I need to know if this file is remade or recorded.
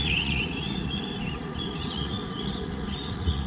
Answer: remade